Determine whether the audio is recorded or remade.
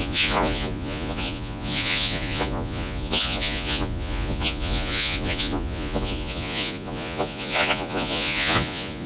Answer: remade